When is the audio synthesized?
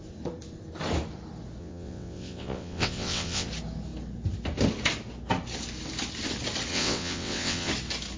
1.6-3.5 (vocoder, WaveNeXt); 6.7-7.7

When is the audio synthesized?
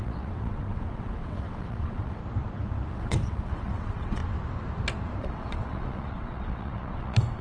0.0-2.2 (vocoder, WaveNeXt); 2.9-4.2; 5.2-7.4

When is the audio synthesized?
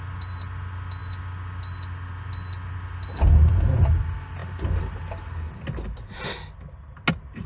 none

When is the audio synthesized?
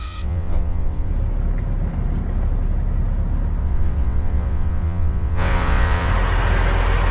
0.0-1.1 (vocoder, WaveNeXt); 3.6-6.1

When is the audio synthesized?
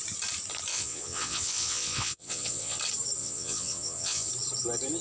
0.7-2.8 (vocoder, WaveNeXt); 3.2-4.3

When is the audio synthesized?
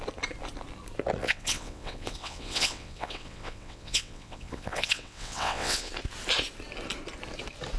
1.2-5.9 (vocoder, WaveNeXt)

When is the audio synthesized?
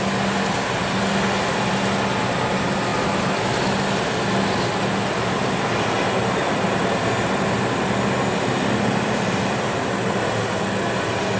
none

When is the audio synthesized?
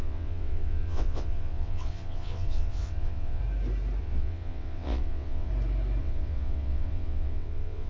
0.0-3.4 (vocoder, WaveNeXt); 4.0-5.5; 6.0-7.9